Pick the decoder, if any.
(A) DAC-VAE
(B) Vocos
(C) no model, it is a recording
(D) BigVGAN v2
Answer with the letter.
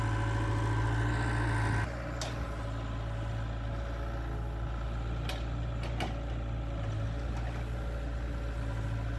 C